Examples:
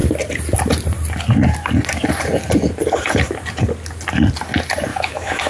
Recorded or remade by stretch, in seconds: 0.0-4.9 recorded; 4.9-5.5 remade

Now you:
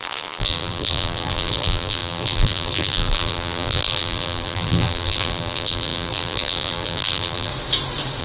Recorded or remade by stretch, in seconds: 0.0-7.5 remade; 7.5-8.2 recorded

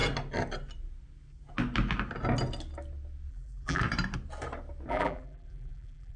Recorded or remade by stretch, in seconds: 0.0-3.3 recorded; 3.3-3.8 remade; 3.8-4.9 recorded; 4.9-6.2 remade

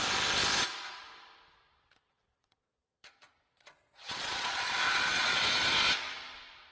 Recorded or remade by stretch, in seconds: 0.0-1.7 recorded; 1.7-5.7 remade; 5.7-6.7 recorded

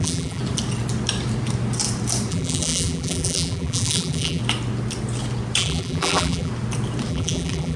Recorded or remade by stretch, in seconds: 0.0-0.4 remade; 0.4-2.3 recorded; 2.3-4.4 remade; 4.4-5.6 recorded; 5.6-6.5 remade; 6.5-7.1 recorded; 7.1-7.8 remade

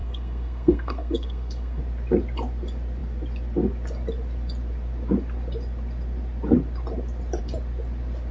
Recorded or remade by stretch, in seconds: 0.0-1.8 remade; 1.8-8.3 recorded

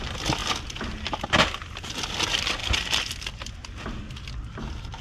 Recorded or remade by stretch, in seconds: 0.0-5.0 recorded